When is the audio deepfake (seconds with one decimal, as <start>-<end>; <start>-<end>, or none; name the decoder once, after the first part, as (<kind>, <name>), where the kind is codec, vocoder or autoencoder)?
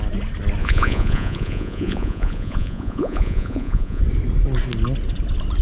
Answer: 0.6-4.0 (vocoder, Vocos)